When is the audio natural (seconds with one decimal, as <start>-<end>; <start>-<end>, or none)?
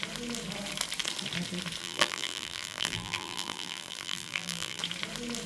0.0-1.8; 4.8-5.5